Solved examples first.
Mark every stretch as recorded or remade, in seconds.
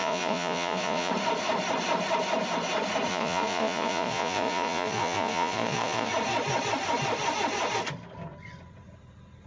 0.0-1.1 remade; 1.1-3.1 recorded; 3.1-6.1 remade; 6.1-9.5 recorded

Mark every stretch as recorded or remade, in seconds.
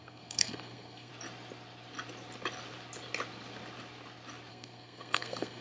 0.0-1.1 remade; 1.1-4.5 recorded; 4.5-5.6 remade